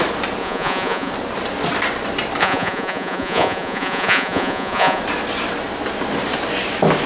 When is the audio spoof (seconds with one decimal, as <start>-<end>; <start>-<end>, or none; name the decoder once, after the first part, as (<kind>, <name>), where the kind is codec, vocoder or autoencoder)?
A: 0.4-1.1 (vocoder, Vocos); 2.4-5.0